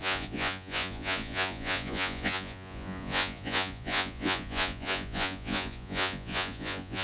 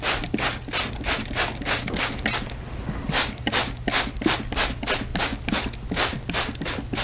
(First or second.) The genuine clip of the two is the second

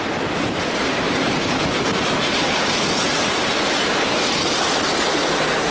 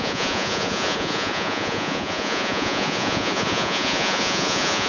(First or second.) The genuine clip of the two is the first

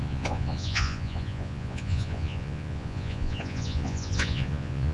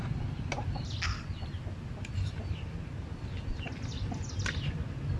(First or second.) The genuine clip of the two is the second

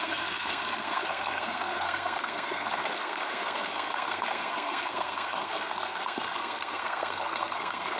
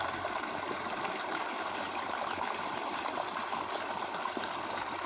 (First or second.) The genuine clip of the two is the second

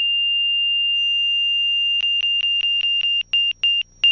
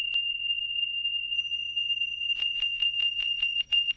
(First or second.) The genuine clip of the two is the first